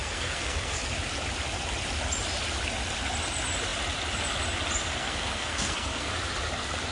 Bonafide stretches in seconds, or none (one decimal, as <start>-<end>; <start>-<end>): 0.8-5.0; 6.1-6.9